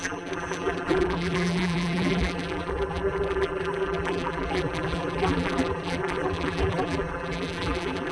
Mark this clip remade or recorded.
remade